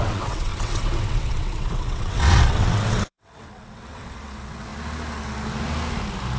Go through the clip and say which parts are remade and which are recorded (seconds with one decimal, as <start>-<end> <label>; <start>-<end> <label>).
0.0-4.7 remade; 4.7-6.4 recorded